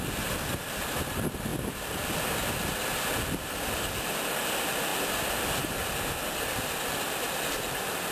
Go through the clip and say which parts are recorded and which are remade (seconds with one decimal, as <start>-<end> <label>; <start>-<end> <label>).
0.0-1.5 recorded; 1.5-2.0 remade; 2.0-4.9 recorded; 4.9-5.8 remade; 5.8-8.1 recorded